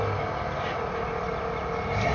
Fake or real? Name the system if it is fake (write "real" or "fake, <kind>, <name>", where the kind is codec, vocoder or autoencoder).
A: real